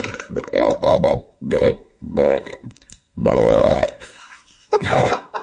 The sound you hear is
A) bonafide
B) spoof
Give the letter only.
B